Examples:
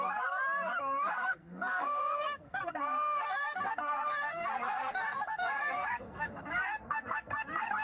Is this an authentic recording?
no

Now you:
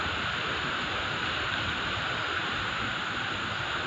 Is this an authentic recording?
yes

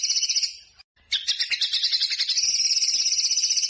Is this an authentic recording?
yes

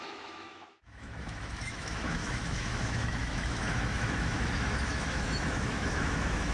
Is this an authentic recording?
no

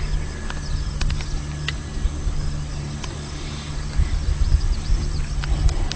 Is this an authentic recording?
yes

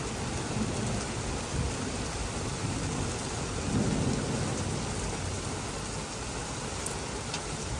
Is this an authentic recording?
yes